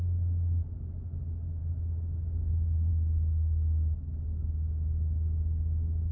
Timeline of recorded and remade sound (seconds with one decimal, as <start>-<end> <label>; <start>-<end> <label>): 0.0-6.1 recorded